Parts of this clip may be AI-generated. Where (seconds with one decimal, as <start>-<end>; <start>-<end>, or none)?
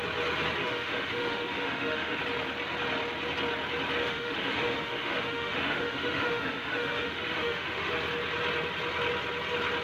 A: 0.6-2.2; 4.0-7.9